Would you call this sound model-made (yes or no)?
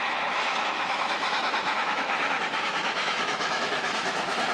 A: yes